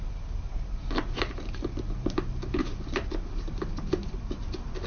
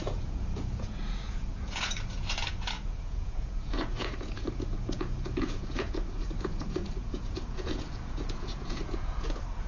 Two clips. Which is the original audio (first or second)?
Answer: first